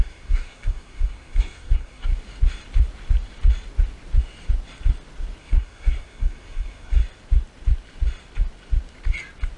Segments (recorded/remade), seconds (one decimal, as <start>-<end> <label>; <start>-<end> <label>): 0.0-2.1 remade; 2.1-5.4 recorded; 5.4-7.0 remade; 7.0-9.6 recorded